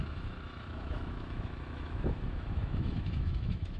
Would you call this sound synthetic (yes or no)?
yes